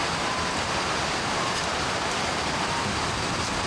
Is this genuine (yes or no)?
yes